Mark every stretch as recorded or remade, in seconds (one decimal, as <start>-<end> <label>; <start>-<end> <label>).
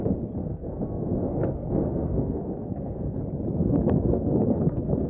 0.0-0.4 recorded; 0.4-3.2 remade; 3.2-3.6 recorded; 3.6-5.1 remade